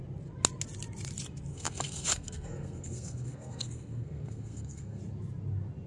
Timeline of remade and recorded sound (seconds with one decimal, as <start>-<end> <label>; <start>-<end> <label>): 0.0-1.5 recorded; 1.5-5.0 remade; 5.0-5.9 recorded